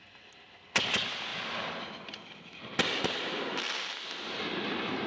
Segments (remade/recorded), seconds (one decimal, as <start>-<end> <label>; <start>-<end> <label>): 0.0-5.1 recorded